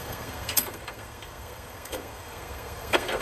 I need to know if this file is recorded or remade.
remade